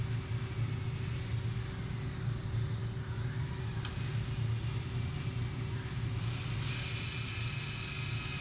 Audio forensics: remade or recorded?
recorded